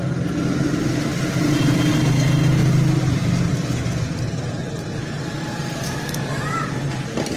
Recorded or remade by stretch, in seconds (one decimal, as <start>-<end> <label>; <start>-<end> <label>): 0.0-7.4 recorded